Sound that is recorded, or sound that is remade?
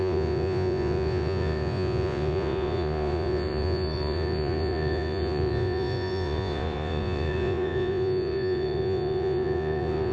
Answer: remade